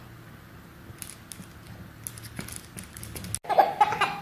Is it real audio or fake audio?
real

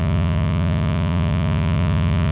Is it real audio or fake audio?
fake